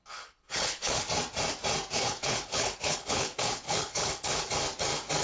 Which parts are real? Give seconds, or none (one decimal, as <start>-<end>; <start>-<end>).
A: 1.1-1.9; 4.5-5.2